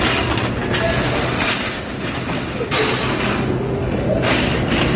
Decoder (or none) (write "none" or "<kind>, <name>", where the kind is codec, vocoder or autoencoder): none